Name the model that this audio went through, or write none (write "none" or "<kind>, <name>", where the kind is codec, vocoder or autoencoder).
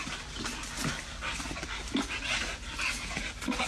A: none